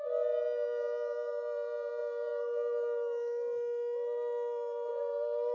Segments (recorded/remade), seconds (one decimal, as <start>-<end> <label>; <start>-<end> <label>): 0.0-5.5 recorded

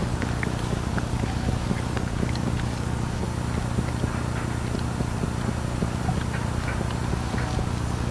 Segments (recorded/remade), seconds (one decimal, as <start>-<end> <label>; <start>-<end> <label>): 0.0-3.2 remade; 3.2-7.1 recorded; 7.1-8.1 remade

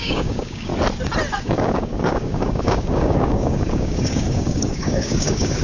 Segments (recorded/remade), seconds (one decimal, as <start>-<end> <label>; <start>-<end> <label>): 0.0-0.7 remade; 0.7-1.4 recorded; 1.4-5.6 remade

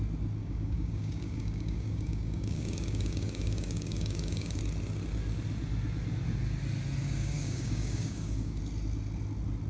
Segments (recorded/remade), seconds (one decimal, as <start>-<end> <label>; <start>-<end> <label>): 0.0-0.4 recorded; 0.4-4.6 remade; 4.6-7.0 recorded; 7.0-8.6 remade; 8.6-9.7 recorded